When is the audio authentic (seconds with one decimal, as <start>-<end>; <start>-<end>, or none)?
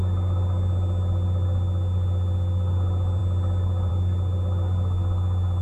0.0-5.6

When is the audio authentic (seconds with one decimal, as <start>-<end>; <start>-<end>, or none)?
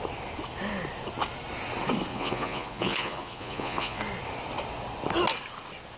0.0-2.1; 4.0-6.0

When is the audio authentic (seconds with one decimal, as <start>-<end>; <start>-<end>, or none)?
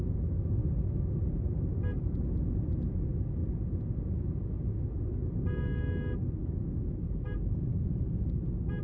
0.0-8.8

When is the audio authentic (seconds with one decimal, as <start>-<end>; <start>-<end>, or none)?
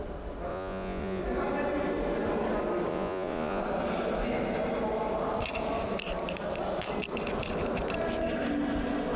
0.0-0.5; 1.2-2.9; 3.6-9.2